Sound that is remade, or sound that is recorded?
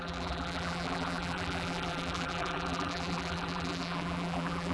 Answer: remade